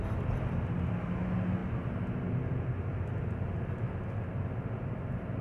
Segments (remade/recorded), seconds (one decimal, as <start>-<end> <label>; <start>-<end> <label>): 0.0-5.4 recorded